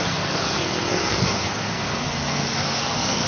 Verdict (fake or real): fake